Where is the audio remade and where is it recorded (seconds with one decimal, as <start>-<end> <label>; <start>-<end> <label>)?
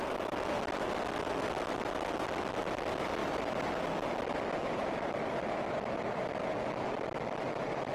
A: 0.0-3.2 recorded; 3.2-3.7 remade; 3.7-4.6 recorded; 4.6-7.9 remade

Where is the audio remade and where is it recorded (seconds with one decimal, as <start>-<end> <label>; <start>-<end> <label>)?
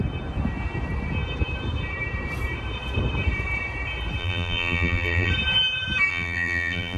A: 0.0-4.2 recorded; 4.2-5.3 remade; 5.3-6.1 recorded; 6.1-7.0 remade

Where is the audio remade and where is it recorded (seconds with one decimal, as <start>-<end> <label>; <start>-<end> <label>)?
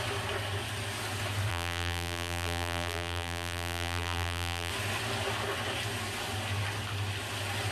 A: 0.0-1.5 recorded; 1.5-4.7 remade; 4.7-7.7 recorded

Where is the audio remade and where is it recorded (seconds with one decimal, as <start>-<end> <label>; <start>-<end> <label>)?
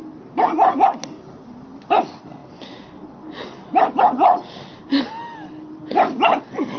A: 0.0-6.8 recorded